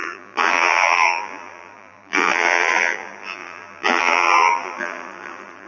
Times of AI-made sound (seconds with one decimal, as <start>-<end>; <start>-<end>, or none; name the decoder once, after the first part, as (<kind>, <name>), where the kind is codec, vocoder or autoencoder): 0.0-5.7 (vocoder, BigVGAN v2)